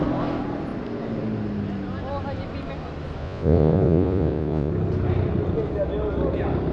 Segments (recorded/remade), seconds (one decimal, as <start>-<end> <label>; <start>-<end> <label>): 0.0-3.2 recorded; 3.2-4.7 remade; 4.7-6.7 recorded